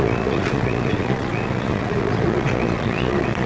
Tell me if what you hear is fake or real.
fake